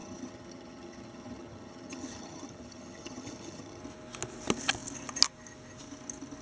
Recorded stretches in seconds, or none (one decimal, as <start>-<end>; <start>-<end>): 3.8-6.4